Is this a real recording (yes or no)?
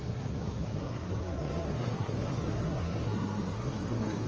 no